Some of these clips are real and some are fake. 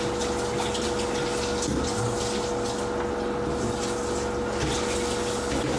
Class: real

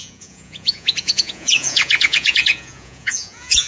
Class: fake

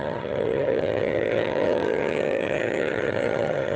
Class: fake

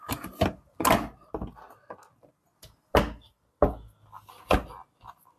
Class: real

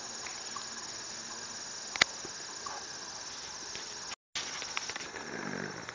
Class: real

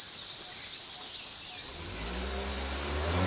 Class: real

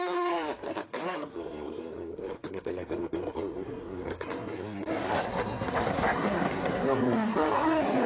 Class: fake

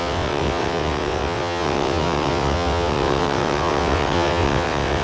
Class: fake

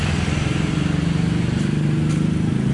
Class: real